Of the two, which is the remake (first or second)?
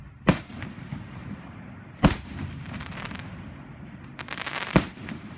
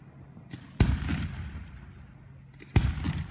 first